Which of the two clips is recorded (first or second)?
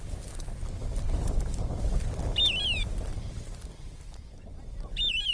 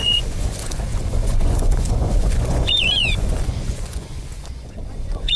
first